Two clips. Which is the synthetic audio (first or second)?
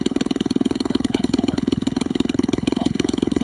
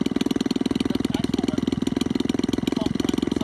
first